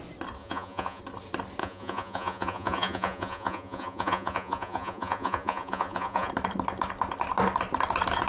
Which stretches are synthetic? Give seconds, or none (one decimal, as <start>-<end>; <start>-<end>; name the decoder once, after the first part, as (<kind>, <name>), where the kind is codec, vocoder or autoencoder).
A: 0.4-1.0 (vocoder, Vocos); 1.6-6.3